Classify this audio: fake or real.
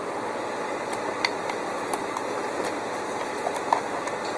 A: real